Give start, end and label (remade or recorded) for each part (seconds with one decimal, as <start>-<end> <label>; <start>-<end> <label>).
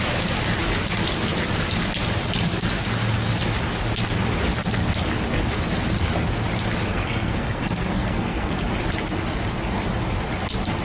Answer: 0.0-6.9 recorded; 6.9-8.7 remade; 8.7-10.8 recorded